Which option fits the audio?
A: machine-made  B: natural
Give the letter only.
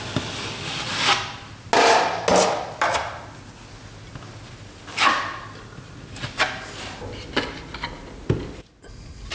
B